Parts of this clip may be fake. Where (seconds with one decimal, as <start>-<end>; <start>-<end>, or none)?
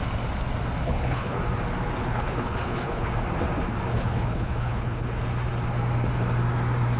0.8-1.4; 2.0-3.1; 3.9-5.2